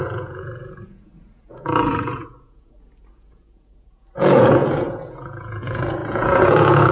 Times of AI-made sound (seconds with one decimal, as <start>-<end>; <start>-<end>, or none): 0.0-6.9